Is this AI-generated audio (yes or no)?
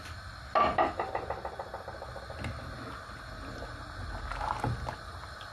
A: no